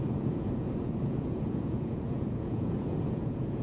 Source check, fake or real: fake